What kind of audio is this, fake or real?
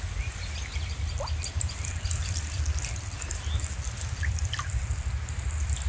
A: real